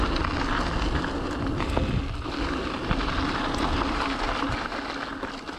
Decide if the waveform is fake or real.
real